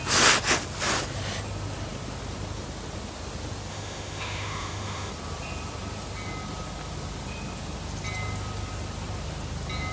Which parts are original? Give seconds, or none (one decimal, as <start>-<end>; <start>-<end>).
0.0-3.7; 5.1-9.9